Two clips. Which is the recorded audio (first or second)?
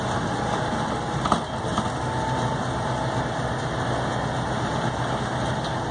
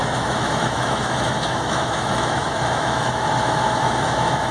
first